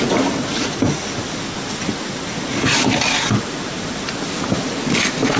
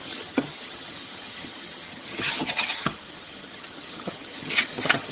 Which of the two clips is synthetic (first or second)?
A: second